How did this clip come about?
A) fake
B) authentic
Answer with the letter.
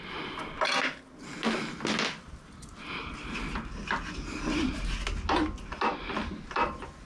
B